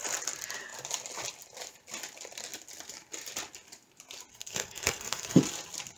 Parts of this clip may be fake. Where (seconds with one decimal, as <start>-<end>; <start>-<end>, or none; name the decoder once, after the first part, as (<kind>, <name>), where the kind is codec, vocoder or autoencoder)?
4.3-5.4 (codec, SNAC)

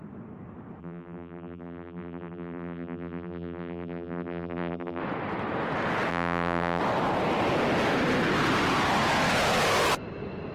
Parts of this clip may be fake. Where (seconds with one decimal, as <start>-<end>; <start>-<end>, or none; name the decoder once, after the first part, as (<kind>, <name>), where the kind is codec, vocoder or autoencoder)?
0.8-5.0 (vocoder, BigVGAN v2); 6.1-6.8

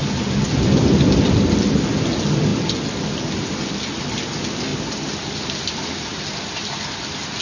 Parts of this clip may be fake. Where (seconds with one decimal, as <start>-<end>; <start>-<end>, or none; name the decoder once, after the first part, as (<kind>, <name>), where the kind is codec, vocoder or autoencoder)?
4.7-6.2 (vocoder, BigVGAN v2)

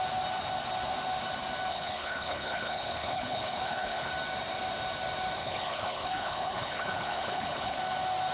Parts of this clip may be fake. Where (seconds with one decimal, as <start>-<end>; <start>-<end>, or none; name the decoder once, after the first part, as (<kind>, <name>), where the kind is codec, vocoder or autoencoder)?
1.7-4.1 (codec, HILCodec); 5.4-7.8

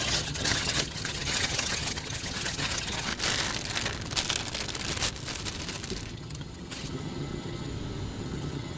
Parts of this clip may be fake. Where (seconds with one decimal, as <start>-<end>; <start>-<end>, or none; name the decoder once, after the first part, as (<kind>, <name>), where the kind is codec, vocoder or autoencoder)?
0.0-3.1 (vocoder, HiFi-GAN); 6.1-7.7; 8.2-8.8

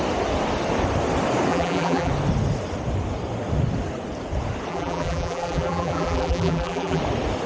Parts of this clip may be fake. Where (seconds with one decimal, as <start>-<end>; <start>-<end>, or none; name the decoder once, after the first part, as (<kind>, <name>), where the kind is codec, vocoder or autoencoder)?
1.5-2.1 (vocoder, BigVGAN v2); 4.7-7.0

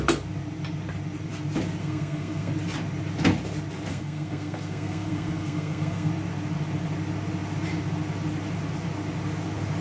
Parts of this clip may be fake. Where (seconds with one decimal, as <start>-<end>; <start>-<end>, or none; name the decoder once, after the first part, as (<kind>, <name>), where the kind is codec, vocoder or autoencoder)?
1.8-2.5 (codec, SNAC); 3.9-6.1